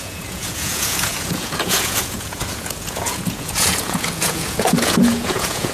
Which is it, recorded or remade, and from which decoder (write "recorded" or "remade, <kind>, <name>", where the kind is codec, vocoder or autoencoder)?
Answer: remade, vocoder, Vocos